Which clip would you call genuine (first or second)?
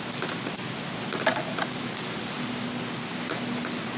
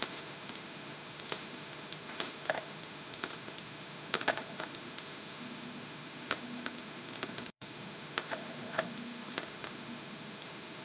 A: first